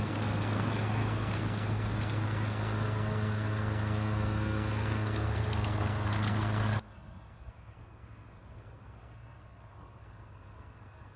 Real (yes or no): no